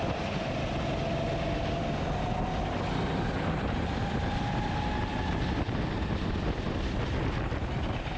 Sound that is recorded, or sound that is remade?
recorded